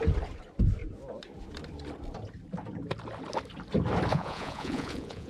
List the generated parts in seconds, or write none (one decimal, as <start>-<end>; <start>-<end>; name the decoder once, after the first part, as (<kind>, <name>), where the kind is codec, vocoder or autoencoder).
4.1-5.3 (vocoder, Vocos)